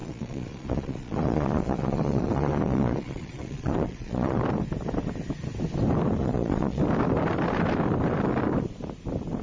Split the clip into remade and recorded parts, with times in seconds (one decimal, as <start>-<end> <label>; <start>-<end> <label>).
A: 0.0-4.4 remade; 4.4-6.2 recorded; 6.2-6.8 remade; 6.8-9.4 recorded